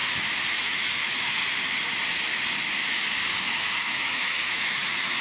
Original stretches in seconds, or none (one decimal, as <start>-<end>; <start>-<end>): 0.0-0.5; 1.4-3.4